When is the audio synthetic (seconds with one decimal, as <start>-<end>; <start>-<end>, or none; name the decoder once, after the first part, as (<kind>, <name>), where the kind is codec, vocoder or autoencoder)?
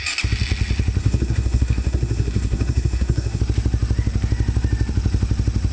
1.0-3.4 (codec, SNAC)